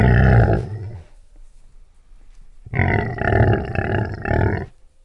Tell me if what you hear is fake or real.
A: real